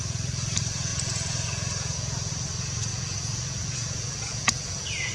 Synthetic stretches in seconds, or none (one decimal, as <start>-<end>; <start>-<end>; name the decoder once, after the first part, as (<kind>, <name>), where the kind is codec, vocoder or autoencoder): 0.9-2.3 (vocoder, Vocos); 2.9-5.1